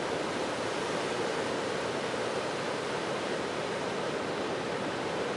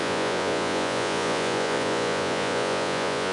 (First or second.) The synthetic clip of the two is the second